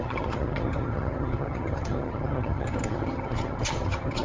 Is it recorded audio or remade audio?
remade